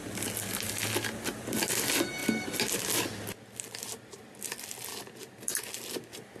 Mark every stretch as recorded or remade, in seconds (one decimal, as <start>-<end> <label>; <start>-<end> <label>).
0.0-6.4 recorded